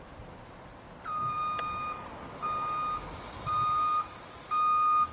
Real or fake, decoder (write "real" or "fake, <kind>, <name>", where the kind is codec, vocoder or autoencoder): real